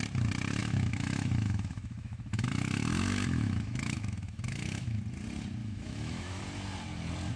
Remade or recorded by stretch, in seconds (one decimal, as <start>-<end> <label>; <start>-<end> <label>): 0.0-0.6 recorded; 0.6-5.0 remade; 5.0-5.6 recorded; 5.6-6.4 remade; 6.4-7.4 recorded

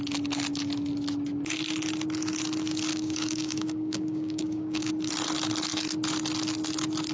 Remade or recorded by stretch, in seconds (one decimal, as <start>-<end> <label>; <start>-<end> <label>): 0.0-2.9 recorded; 2.9-4.9 remade; 4.9-7.1 recorded

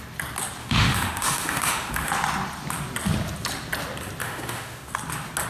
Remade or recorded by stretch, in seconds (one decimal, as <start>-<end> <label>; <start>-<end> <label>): 0.0-0.6 recorded; 0.6-2.1 remade; 2.1-4.2 recorded; 4.2-4.9 remade; 4.9-5.5 recorded

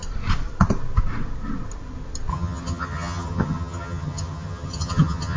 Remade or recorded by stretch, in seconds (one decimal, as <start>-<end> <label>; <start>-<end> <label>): 0.0-2.3 recorded; 2.3-5.4 remade

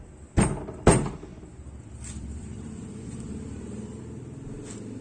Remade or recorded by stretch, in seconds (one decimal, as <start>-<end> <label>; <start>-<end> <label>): 0.0-1.3 recorded; 1.3-4.0 remade; 4.0-5.0 recorded

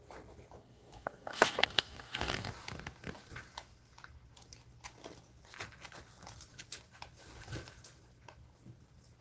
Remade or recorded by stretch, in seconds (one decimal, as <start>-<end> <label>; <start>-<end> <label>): 0.0-0.6 recorded; 0.6-2.5 remade; 2.5-9.2 recorded

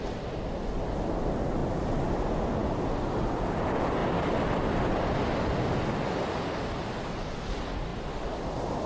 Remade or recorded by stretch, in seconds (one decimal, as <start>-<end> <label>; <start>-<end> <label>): 0.0-8.9 recorded

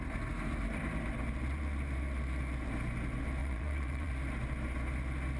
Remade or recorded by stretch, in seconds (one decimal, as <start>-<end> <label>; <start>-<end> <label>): 0.0-3.4 recorded; 3.4-4.1 remade; 4.1-5.4 recorded